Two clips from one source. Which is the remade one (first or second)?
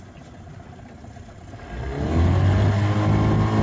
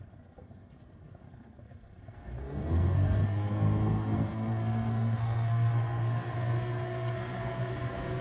second